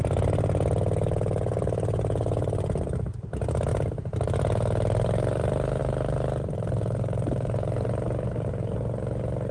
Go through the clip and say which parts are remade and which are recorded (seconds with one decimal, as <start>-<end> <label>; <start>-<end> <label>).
0.0-3.7 recorded; 3.7-5.8 remade; 5.8-9.5 recorded